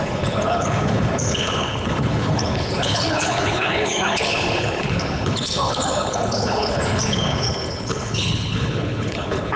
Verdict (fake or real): fake